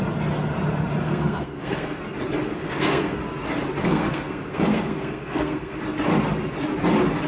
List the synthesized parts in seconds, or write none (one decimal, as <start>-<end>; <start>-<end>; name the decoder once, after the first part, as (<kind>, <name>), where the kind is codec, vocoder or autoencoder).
1.0-2.0 (codec, SNAC); 2.5-3.2; 3.8-5.8